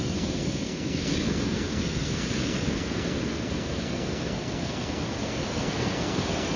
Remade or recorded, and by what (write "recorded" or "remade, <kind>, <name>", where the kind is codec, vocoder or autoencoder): remade, codec, SNAC